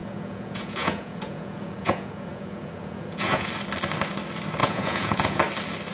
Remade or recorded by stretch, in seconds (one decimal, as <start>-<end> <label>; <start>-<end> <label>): 0.0-3.5 remade; 3.5-4.6 recorded; 4.6-5.4 remade; 5.4-5.9 recorded